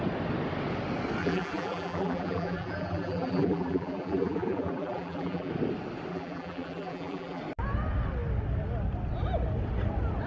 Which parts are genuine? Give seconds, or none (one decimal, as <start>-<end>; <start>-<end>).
0.0-1.2; 5.5-6.1; 7.4-10.3